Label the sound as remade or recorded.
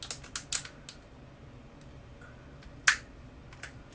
recorded